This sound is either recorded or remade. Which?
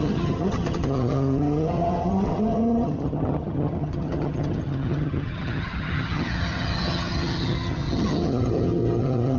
remade